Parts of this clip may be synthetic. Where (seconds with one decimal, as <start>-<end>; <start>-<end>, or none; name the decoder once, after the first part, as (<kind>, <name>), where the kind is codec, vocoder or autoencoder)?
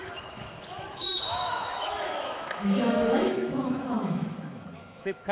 0.0-5.3 (autoencoder, DAC-VAE)